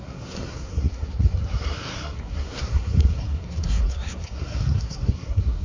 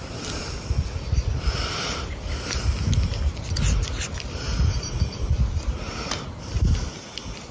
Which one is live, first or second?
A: second